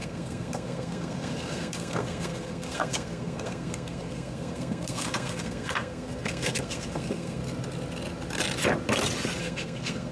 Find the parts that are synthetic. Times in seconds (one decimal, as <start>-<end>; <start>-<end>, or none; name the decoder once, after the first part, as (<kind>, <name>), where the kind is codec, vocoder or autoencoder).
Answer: 0.0-7.4 (codec, SNAC); 9.4-10.1